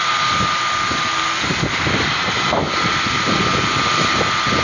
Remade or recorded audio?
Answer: recorded